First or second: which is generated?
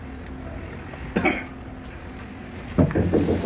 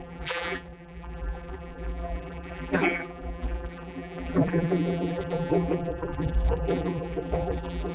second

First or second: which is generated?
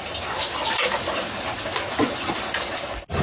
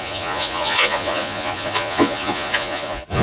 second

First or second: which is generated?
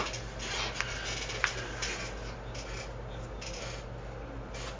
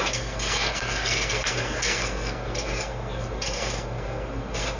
second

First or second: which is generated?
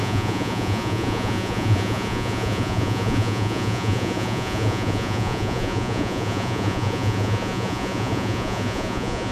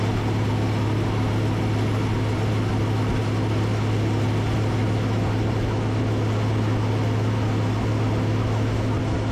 first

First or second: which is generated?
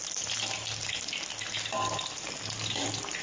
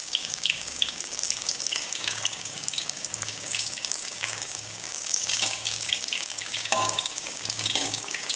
second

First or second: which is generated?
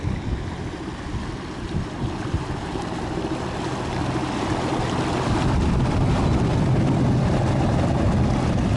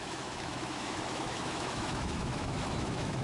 second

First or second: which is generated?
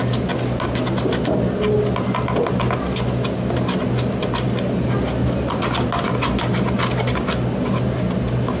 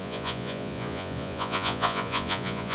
second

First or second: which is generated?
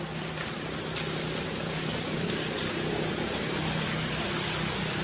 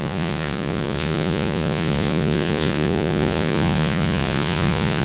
second